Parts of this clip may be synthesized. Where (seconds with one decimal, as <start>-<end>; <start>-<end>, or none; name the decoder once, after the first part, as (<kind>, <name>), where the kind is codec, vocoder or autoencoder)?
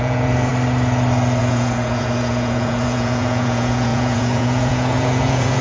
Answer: 0.0-0.5 (vocoder, Vocos); 1.4-5.6